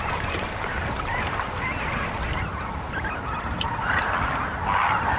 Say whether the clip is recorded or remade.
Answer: recorded